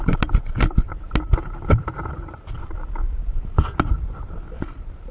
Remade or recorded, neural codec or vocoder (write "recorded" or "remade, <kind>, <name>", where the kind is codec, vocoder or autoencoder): remade, vocoder, BigVGAN v2